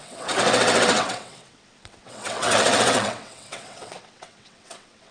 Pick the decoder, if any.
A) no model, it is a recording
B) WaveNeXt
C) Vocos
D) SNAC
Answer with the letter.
B